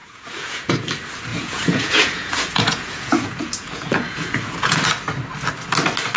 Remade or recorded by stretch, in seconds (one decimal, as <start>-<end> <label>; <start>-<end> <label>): 0.0-0.7 remade; 0.7-1.3 recorded; 1.3-4.8 remade; 4.8-6.2 recorded